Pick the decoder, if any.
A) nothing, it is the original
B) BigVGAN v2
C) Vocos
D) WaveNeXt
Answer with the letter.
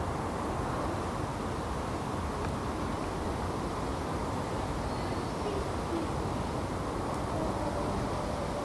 A